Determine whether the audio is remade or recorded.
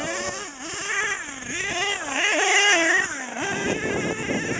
recorded